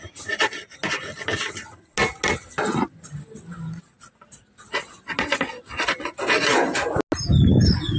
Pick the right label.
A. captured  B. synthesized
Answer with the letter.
A